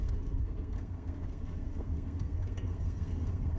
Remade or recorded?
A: remade